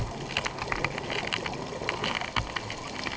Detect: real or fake real